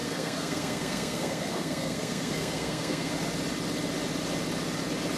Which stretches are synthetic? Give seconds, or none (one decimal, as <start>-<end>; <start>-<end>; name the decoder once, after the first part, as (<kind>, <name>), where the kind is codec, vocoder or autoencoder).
0.0-3.1 (codec, SNAC)